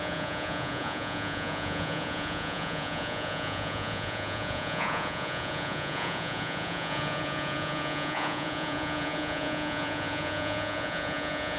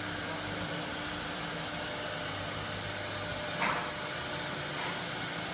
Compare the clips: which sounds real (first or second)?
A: second